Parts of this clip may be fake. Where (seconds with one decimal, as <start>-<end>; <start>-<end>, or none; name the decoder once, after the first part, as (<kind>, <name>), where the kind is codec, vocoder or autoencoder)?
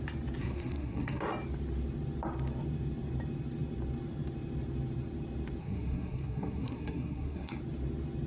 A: 0.4-1.2 (codec, SNAC); 5.6-7.6